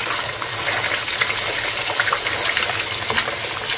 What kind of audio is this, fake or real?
real